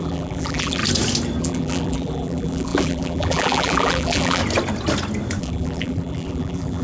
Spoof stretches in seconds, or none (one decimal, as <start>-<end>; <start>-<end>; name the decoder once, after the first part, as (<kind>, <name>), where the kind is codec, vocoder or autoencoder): 0.0-0.8 (vocoder, BigVGAN v2); 1.4-4.4; 5.4-6.8